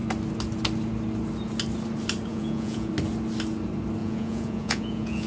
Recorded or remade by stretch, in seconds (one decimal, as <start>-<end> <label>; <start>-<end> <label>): 0.0-2.3 recorded; 2.3-2.9 remade; 2.9-4.0 recorded; 4.0-5.3 remade